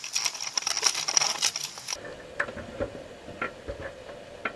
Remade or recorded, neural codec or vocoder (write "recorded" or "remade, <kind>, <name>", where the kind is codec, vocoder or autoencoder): recorded